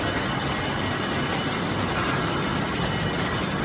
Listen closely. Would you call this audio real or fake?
real